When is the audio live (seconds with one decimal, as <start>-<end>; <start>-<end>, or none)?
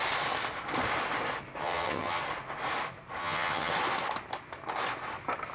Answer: 0.0-1.6; 2.2-3.2; 3.7-5.5